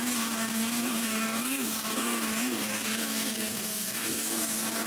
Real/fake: fake